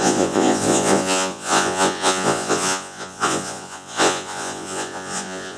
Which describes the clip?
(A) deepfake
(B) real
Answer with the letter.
A